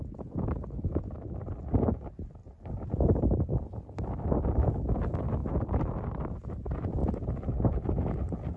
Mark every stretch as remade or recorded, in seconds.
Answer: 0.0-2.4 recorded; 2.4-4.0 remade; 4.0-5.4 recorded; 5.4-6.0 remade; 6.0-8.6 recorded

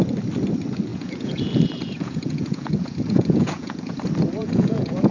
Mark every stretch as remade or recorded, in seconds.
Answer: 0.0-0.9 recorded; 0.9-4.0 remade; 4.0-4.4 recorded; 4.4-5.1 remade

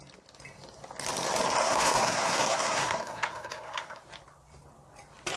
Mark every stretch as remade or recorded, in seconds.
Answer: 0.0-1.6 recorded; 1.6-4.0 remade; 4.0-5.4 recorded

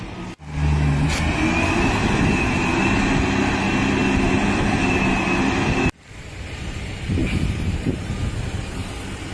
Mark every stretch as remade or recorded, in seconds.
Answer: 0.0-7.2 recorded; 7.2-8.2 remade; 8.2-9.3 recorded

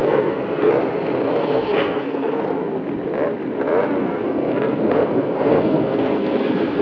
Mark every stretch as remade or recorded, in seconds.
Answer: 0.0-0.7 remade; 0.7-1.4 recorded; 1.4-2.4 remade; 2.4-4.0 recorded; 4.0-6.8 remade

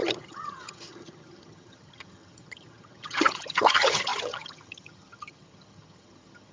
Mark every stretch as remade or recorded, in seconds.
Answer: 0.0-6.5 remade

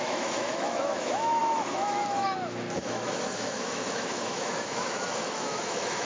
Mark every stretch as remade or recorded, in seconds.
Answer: 0.0-6.0 remade